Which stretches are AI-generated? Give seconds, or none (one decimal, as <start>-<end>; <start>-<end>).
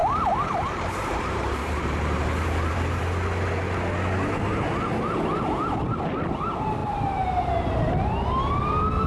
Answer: 0.0-3.0; 6.8-7.7